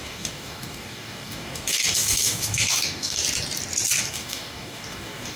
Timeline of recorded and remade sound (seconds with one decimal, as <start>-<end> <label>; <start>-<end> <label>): 0.0-3.2 remade; 3.2-4.0 recorded; 4.0-5.4 remade